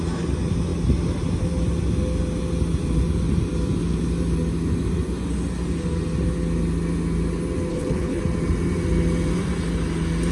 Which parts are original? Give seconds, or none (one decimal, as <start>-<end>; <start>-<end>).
0.0-7.7; 8.2-10.3